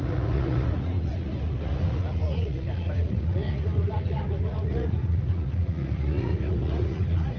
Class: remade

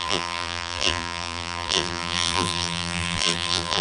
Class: remade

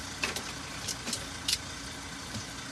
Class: recorded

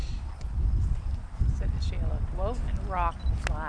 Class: recorded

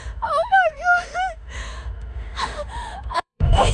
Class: remade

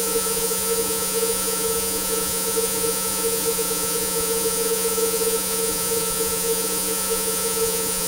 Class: remade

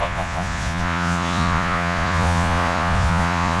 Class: remade